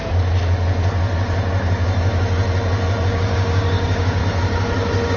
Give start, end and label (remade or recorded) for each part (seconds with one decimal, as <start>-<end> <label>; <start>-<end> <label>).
0.0-3.1 recorded; 3.1-4.2 remade; 4.2-5.2 recorded